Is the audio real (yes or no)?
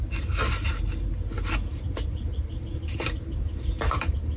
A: yes